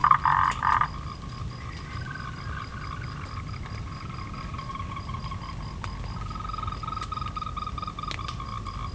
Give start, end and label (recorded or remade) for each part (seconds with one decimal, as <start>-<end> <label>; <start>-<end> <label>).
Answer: 0.0-8.9 recorded